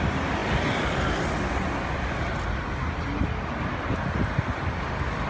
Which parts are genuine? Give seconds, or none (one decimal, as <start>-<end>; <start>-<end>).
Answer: 0.0-5.3